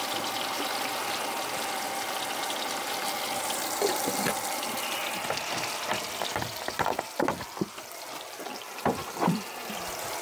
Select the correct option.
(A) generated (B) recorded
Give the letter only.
B